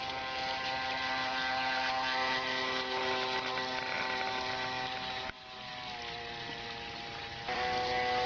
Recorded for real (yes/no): yes